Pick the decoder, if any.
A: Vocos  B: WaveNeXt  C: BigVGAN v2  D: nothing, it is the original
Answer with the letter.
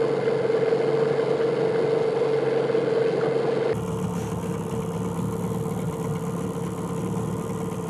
D